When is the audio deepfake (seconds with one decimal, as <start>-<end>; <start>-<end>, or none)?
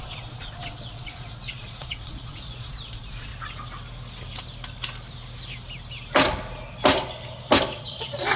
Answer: 0.0-3.3; 7.8-8.4